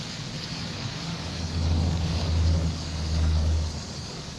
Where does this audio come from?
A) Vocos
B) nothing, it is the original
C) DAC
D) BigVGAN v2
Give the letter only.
C